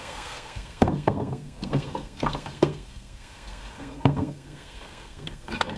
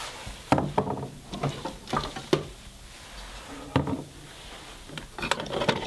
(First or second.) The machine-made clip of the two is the first